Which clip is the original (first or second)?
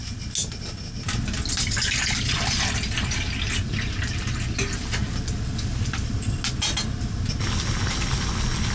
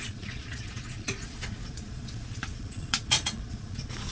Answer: first